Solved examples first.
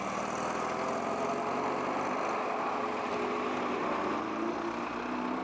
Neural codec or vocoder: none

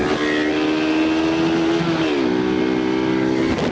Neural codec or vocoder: none